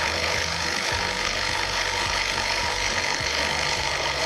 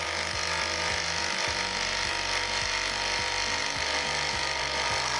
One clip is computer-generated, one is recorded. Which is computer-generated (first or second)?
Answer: first